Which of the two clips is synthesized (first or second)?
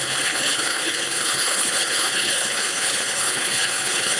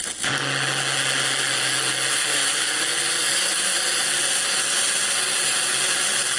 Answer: first